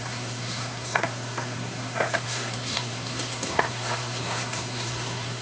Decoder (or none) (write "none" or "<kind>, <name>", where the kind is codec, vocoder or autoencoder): codec, SNAC